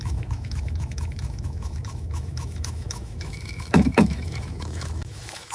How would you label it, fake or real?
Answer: fake